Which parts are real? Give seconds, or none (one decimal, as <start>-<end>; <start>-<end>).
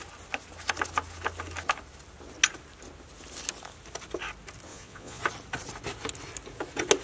0.0-4.7; 5.2-7.0